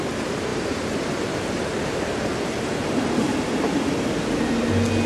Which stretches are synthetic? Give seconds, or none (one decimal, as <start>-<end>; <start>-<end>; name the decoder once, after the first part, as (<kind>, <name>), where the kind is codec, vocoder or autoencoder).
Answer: 0.5-3.6 (vocoder, BigVGAN v2)